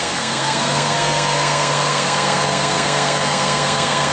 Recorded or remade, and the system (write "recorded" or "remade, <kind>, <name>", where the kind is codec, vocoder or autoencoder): remade, codec, SNAC